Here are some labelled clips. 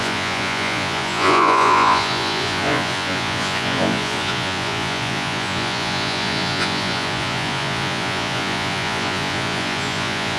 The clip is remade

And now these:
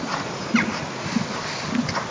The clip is recorded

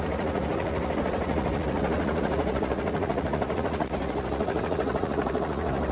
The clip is remade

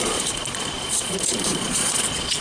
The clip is remade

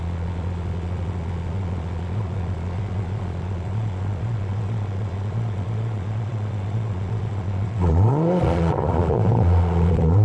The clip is remade